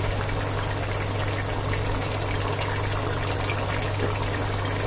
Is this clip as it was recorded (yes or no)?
yes